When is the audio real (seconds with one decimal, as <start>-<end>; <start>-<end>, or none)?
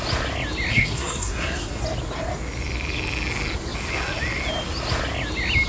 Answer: 0.0-0.7; 1.8-5.7